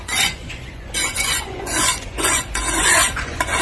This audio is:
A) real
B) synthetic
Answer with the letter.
B